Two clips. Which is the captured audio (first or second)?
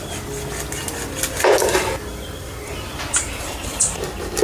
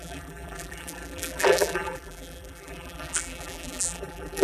first